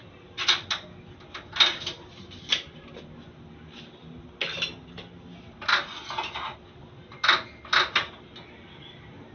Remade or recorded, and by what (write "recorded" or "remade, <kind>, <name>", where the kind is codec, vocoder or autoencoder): recorded